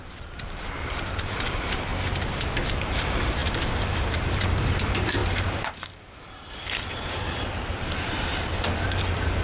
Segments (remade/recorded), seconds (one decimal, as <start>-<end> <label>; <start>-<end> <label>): 0.0-1.9 remade; 1.9-2.7 recorded; 2.7-9.4 remade